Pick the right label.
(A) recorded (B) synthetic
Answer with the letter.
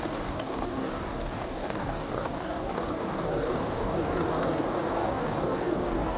B